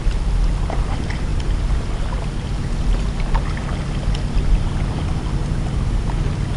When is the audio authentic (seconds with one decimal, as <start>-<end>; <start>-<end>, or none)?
0.0-6.6

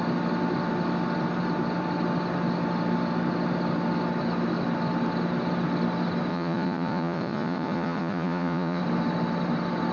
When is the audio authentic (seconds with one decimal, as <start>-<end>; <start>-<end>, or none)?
0.0-6.3; 8.8-9.9

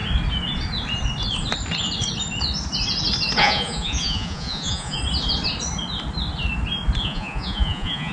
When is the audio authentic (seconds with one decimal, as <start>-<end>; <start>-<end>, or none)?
0.0-3.4; 5.0-7.0

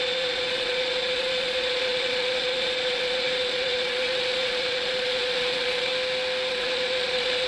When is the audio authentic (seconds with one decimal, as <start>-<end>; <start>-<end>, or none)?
5.9-6.5